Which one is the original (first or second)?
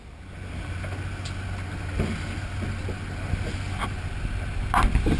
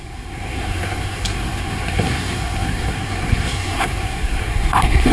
first